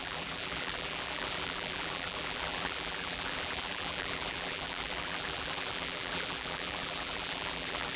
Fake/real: fake